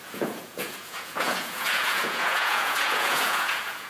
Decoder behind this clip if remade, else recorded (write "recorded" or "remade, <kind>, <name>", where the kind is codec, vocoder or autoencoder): remade, vocoder, Vocos